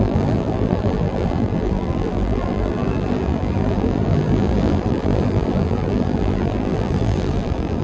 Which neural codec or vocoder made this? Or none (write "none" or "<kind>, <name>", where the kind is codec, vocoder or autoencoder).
vocoder, BigVGAN v2